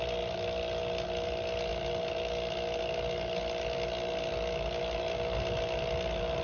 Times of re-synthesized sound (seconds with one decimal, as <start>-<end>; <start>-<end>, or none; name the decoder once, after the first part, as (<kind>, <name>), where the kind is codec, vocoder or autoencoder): none